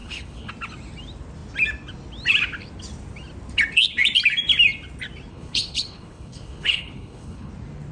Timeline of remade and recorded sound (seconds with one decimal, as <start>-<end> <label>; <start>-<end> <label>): 0.0-0.5 remade; 0.5-5.3 recorded; 5.3-7.5 remade; 7.5-7.9 recorded